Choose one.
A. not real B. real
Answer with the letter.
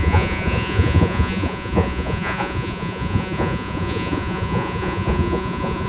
A